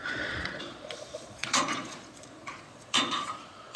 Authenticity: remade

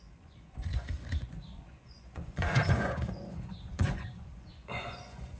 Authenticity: remade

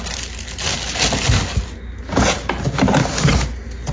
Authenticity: recorded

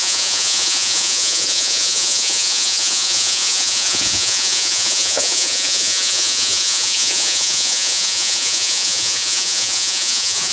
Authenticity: remade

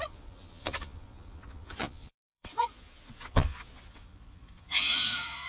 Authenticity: remade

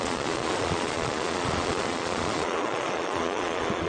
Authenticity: remade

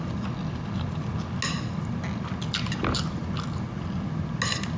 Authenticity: recorded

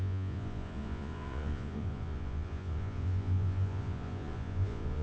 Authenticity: remade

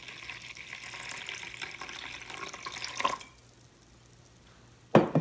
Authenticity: recorded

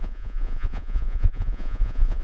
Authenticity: remade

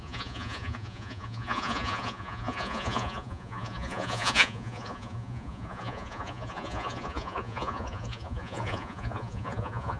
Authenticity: remade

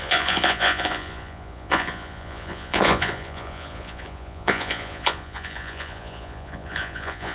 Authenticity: remade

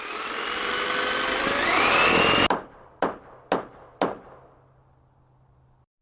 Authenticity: recorded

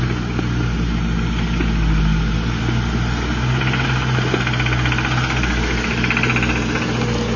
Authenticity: recorded